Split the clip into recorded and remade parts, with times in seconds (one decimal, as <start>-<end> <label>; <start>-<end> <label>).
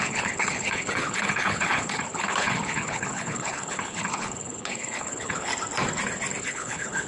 0.0-5.5 remade; 5.5-6.4 recorded; 6.4-7.1 remade